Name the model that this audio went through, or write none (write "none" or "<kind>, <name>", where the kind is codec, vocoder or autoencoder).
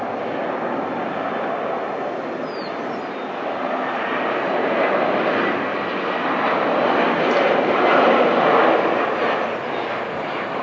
none